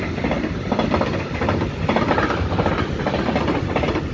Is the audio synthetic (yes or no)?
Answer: no